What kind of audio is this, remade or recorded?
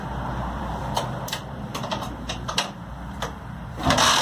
remade